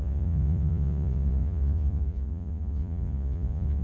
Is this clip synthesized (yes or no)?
yes